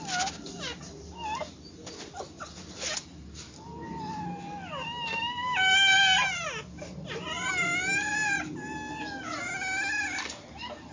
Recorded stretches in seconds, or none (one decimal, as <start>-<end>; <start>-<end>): 0.0-10.9